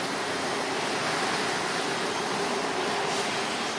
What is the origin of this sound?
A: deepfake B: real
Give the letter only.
B